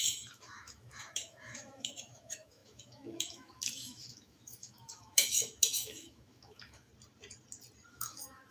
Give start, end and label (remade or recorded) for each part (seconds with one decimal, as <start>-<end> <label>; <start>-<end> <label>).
0.0-6.9 remade; 6.9-7.9 recorded; 7.9-8.5 remade